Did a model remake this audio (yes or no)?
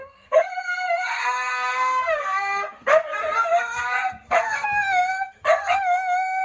yes